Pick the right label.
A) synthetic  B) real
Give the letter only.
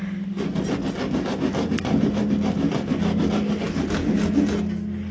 B